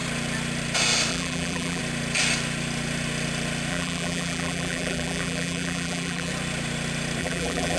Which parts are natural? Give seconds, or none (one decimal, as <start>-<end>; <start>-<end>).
0.0-1.1; 1.8-3.7; 6.3-7.2